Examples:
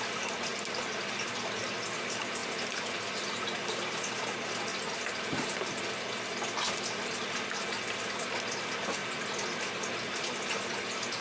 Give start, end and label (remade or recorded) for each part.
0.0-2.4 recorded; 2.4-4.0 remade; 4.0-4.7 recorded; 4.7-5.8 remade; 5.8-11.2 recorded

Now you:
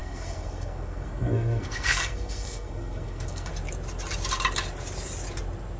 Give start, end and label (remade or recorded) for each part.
0.0-3.5 remade; 3.5-5.8 recorded